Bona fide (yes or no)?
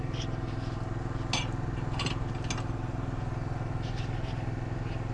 yes